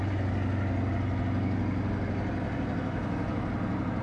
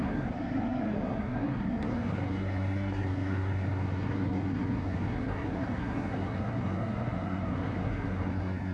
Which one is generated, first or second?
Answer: second